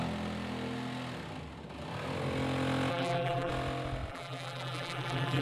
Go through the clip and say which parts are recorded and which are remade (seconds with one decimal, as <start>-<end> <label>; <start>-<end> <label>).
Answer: 0.0-2.9 recorded; 2.9-3.5 remade; 3.5-4.1 recorded; 4.1-5.4 remade